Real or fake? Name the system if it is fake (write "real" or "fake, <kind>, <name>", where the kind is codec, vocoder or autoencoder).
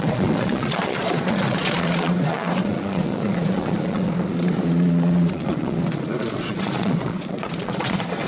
fake, vocoder, Vocos